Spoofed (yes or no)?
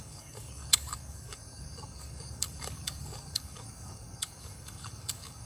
yes